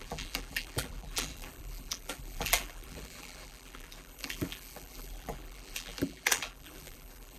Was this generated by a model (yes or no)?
yes